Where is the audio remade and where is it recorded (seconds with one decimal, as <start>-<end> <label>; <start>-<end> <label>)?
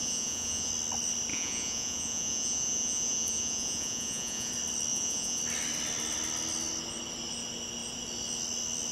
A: 0.0-0.7 remade; 0.7-1.3 recorded; 1.3-4.5 remade; 4.5-4.9 recorded; 4.9-5.4 remade; 5.4-8.9 recorded